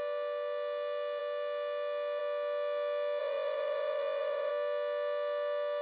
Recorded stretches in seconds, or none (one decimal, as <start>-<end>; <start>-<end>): 0.0-3.2; 4.5-5.8